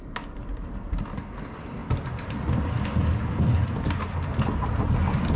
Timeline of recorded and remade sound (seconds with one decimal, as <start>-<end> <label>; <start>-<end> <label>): 0.0-5.4 recorded